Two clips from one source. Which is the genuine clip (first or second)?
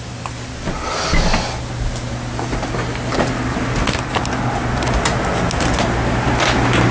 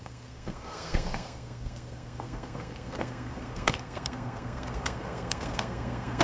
first